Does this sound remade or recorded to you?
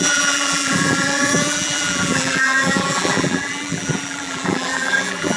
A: remade